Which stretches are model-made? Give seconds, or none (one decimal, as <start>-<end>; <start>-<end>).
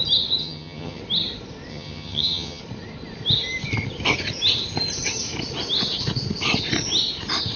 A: 0.4-1.0; 1.7-2.6